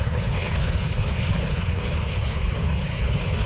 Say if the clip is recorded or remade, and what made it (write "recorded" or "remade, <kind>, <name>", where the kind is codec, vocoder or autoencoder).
remade, codec, HILCodec